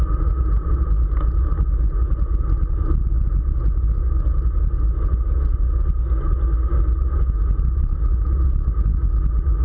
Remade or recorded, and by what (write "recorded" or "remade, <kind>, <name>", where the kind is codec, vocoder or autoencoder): recorded